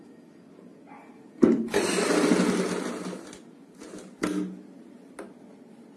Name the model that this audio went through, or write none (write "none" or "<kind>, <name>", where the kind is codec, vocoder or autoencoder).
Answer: none